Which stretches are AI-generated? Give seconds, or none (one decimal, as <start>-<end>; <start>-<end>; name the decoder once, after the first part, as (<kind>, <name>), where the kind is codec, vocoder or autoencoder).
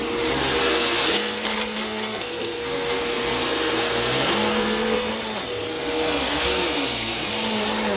0.6-5.1 (codec, SNAC); 5.5-7.3